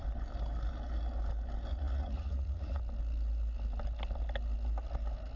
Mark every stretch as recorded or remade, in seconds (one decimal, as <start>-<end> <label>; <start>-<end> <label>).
0.0-1.7 recorded; 1.7-2.8 remade; 2.8-5.4 recorded